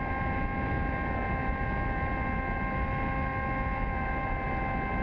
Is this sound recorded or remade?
recorded